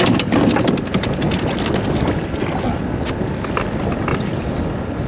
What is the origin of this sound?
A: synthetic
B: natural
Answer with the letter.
B